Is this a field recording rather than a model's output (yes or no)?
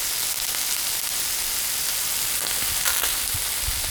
yes